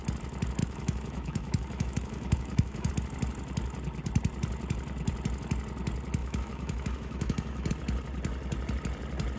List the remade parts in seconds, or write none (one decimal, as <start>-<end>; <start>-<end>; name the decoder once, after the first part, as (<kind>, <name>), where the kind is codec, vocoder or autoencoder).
0.6-2.9 (autoencoder, DAC-VAE); 6.2-7.7

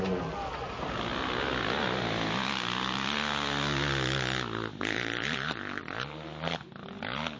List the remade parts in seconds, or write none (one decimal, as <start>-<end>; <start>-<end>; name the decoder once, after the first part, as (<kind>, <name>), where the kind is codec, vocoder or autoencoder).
none